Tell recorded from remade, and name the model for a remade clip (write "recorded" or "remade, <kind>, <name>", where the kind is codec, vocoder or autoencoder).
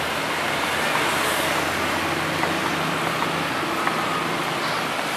recorded